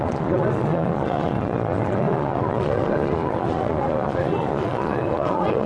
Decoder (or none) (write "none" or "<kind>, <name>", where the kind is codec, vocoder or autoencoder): vocoder, Vocos